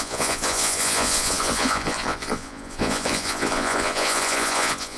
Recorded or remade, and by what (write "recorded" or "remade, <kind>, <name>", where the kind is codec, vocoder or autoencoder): remade, vocoder, Vocos